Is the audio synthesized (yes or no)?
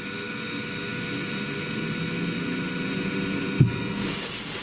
no